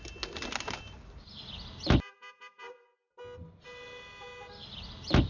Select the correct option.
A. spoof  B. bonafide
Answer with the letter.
B